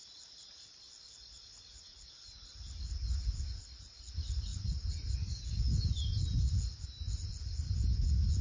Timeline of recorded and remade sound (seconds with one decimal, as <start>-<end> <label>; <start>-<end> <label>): 0.0-4.5 recorded; 4.5-5.4 remade; 5.4-8.4 recorded